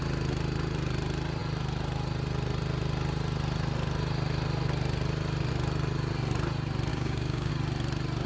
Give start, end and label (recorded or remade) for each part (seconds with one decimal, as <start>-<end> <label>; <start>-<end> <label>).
0.0-6.9 recorded; 6.9-7.5 remade; 7.5-8.3 recorded

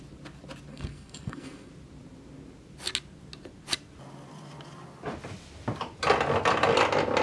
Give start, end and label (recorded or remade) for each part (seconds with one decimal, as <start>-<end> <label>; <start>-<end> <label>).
0.0-0.7 recorded; 0.7-1.7 remade; 1.7-7.2 recorded

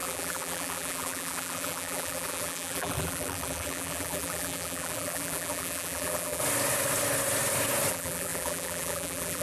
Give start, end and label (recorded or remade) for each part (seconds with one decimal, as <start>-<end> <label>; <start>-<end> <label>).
0.0-6.4 remade; 6.4-7.9 recorded; 7.9-9.4 remade

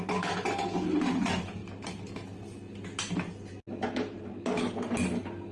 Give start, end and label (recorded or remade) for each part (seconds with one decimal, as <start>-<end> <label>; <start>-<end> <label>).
0.0-5.5 recorded

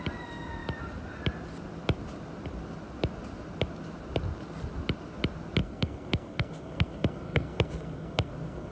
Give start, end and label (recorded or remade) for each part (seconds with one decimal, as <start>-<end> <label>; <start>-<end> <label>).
0.0-5.6 recorded; 5.6-8.7 remade

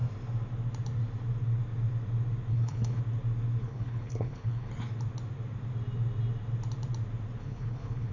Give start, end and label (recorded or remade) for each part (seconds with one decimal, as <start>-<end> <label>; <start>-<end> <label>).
0.0-2.5 recorded; 2.5-3.0 remade; 3.0-3.6 recorded; 3.6-4.7 remade; 4.7-7.4 recorded; 7.4-8.1 remade

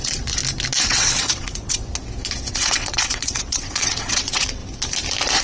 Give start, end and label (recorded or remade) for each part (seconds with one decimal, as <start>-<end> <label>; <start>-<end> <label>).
0.0-0.4 remade; 0.4-0.9 recorded; 0.9-1.9 remade; 1.9-2.5 recorded; 2.5-4.6 remade; 4.6-5.4 recorded